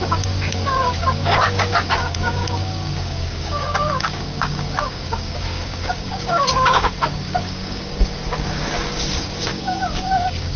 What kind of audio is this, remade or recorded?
remade